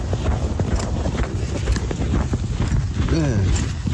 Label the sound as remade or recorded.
recorded